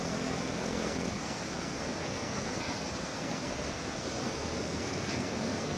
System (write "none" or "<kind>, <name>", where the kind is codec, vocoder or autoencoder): codec, SNAC